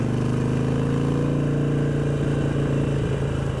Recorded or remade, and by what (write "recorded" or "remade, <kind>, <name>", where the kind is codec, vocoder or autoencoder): recorded